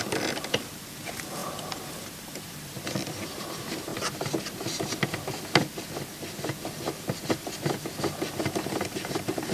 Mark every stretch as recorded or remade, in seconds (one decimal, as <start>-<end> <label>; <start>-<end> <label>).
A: 0.0-3.9 remade; 3.9-8.0 recorded; 8.0-9.5 remade